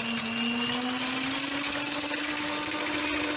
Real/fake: real